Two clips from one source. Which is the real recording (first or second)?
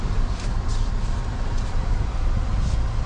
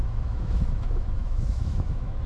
first